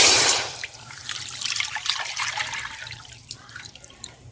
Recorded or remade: remade